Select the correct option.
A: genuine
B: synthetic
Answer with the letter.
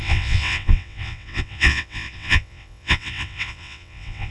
B